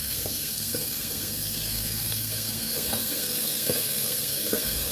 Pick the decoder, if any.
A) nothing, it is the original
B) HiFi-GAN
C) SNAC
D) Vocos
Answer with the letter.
C